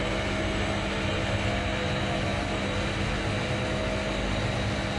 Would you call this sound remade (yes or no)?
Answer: no